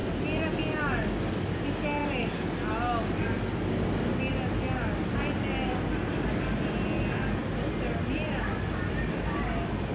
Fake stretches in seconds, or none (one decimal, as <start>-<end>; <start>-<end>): none